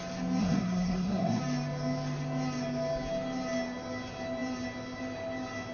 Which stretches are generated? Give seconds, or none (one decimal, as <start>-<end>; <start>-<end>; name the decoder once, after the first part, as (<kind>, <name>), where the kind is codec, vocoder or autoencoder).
0.4-1.4 (codec, SNAC)